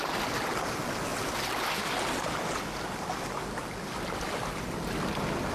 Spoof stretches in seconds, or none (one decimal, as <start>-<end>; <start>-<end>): none